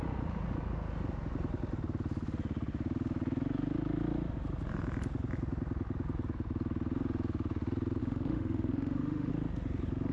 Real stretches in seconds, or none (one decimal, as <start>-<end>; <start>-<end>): 0.0-8.0; 9.3-10.1